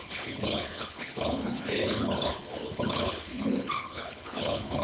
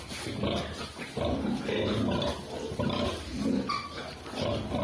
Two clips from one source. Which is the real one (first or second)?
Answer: second